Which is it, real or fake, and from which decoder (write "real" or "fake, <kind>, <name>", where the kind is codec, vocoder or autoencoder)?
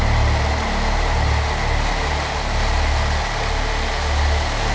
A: real